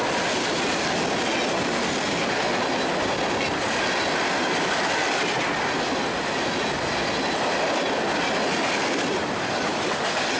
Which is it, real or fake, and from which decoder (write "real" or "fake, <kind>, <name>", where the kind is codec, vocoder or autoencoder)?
real